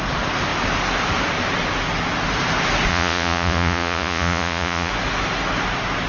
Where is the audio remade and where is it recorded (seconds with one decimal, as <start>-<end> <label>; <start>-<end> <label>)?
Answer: 0.0-2.9 recorded; 2.9-4.9 remade; 4.9-6.1 recorded